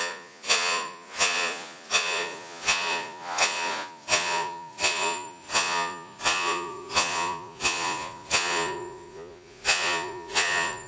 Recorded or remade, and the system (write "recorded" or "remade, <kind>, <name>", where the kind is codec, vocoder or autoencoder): remade, vocoder, Vocos